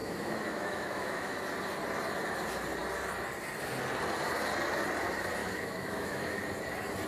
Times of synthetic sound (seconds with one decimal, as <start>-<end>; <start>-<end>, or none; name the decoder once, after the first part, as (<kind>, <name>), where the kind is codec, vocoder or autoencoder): 0.0-1.4 (autoencoder, DAC-VAE); 5.4-6.4